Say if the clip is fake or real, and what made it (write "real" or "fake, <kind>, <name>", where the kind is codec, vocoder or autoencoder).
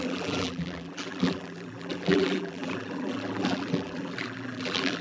fake, vocoder, BigVGAN v2